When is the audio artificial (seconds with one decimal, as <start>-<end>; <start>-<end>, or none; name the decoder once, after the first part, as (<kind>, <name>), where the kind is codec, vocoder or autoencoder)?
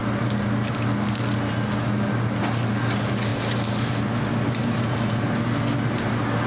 none